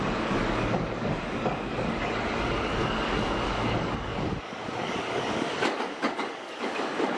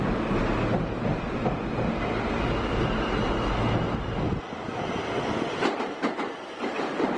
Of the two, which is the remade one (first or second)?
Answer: first